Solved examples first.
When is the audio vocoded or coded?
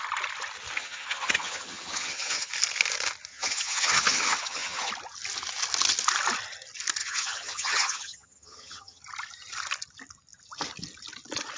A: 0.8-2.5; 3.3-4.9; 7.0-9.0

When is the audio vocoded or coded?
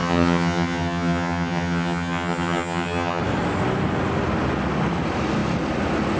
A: 0.0-3.2